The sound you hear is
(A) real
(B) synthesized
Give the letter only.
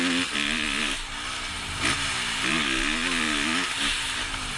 A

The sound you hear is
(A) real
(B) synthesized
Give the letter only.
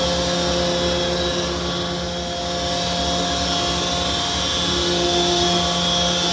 A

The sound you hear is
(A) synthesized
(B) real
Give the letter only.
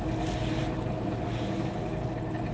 B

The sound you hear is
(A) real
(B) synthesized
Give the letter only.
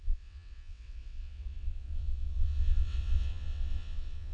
B